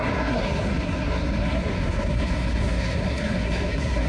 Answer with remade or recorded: remade